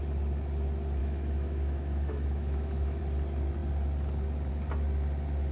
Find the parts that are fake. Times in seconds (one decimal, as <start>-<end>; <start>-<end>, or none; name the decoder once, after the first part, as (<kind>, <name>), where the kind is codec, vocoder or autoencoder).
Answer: 1.0-3.0 (autoencoder, DAC-VAE)